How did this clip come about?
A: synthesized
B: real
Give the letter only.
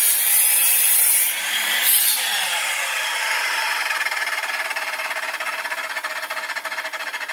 A